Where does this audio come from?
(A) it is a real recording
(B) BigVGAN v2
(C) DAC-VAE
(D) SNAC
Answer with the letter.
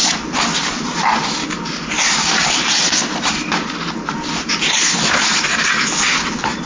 A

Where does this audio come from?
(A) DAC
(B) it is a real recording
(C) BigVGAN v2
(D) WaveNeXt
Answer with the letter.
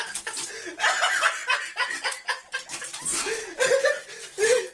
B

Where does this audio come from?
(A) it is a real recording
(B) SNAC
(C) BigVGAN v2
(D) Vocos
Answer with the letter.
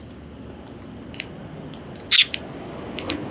A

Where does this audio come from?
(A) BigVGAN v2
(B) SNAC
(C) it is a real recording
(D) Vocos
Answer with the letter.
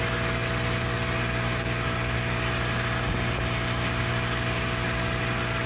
C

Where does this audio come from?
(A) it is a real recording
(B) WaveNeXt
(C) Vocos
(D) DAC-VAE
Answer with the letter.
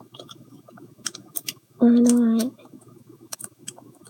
D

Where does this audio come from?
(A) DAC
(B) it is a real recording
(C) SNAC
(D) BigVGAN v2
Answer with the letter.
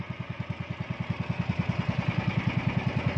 B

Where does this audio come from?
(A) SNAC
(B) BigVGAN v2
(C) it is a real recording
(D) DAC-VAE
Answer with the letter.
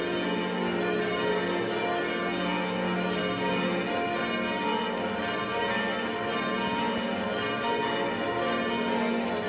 C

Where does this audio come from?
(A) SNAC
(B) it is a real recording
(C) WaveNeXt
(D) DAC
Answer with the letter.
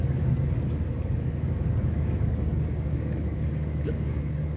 D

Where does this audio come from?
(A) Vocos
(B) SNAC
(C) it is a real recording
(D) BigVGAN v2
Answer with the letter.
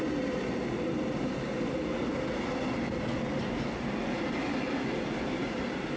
C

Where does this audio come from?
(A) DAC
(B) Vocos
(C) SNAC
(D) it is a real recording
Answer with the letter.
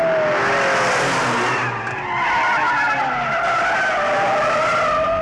D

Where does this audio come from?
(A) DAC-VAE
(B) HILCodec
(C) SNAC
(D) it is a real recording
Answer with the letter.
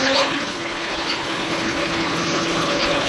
B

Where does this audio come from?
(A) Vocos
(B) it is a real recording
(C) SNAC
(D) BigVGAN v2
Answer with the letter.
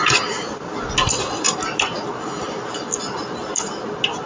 B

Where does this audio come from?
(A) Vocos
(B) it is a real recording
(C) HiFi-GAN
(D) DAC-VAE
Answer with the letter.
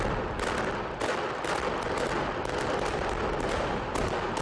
B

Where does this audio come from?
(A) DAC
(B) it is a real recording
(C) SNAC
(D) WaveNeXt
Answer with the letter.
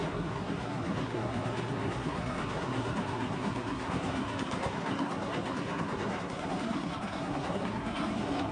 C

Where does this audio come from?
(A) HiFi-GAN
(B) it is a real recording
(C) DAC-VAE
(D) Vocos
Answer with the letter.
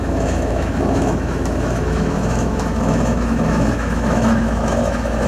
C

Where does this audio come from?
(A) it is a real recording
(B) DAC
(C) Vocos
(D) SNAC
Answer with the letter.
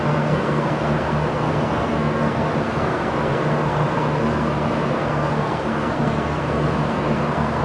D